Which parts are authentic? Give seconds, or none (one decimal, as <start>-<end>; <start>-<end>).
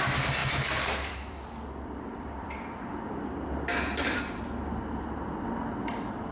0.0-0.4; 4.2-6.3